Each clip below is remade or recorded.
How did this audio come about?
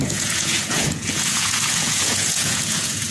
remade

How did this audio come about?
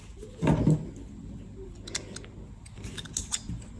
recorded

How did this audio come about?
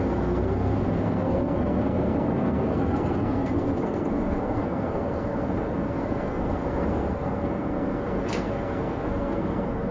remade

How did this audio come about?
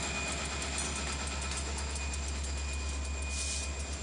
recorded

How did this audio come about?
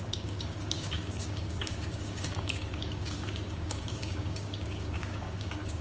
remade